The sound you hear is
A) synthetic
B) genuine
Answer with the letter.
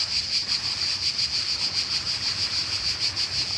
B